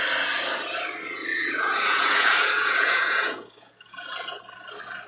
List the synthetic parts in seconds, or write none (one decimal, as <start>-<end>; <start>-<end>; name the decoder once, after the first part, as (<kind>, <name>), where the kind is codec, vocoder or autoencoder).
1.3-4.4 (vocoder, Vocos)